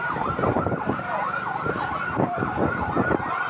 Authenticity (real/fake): fake